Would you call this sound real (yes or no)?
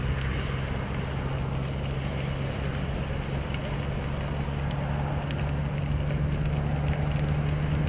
yes